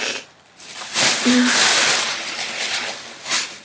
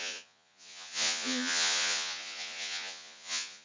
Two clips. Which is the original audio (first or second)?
first